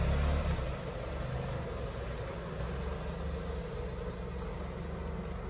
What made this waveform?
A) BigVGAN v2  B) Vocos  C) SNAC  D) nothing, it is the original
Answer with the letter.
D